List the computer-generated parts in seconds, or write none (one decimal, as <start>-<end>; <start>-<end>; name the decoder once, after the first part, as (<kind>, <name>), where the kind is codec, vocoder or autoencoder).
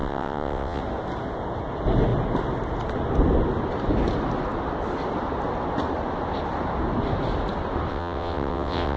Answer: 0.0-0.8 (vocoder, WaveNeXt); 7.9-9.0